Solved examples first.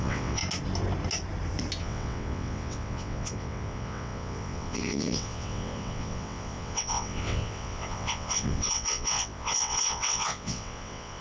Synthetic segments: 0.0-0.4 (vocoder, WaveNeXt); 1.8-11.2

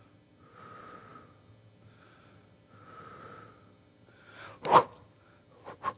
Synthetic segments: none

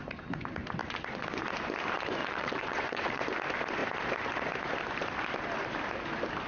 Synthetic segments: 2.2-3.2 (vocoder, WaveNeXt)

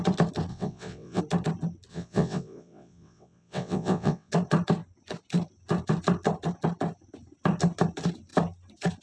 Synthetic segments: 0.5-1.2 (vocoder, WaveNeXt); 1.9-4.3